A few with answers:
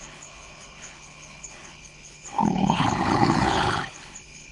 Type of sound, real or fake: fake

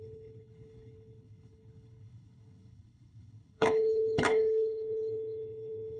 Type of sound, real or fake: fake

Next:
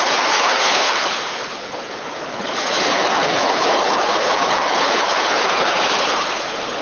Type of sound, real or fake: fake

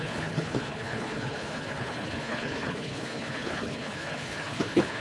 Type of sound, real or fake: fake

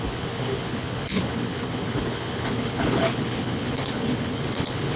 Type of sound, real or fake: fake